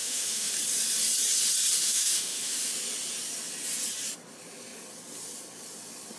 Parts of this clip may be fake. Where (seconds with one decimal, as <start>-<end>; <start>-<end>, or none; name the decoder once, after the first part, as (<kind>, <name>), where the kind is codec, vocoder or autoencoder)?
0.0-0.5 (autoencoder, DAC-VAE); 1.8-2.7